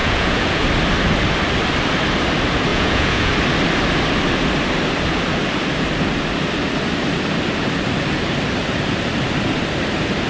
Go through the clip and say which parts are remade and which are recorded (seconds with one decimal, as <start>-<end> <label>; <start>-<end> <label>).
0.0-0.6 remade; 0.6-2.7 recorded; 2.7-3.3 remade; 3.3-10.3 recorded